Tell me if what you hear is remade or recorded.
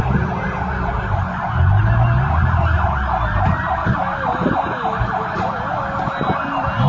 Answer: recorded